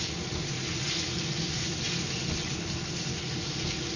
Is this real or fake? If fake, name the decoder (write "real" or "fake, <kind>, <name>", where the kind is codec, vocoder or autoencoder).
real